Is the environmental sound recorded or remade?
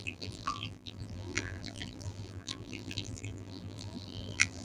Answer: remade